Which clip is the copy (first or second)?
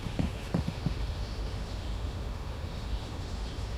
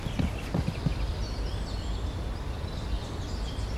first